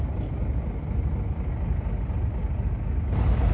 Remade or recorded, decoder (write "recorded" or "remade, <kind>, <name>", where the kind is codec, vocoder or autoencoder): recorded